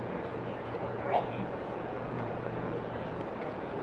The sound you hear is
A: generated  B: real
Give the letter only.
A